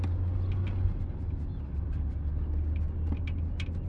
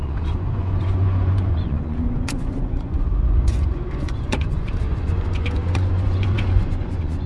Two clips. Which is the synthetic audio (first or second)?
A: second